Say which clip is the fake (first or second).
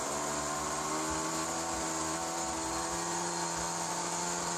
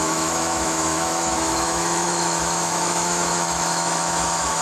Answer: second